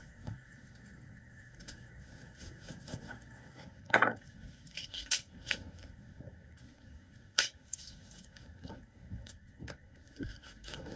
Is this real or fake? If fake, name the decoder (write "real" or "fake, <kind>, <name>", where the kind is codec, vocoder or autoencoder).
fake, codec, SNAC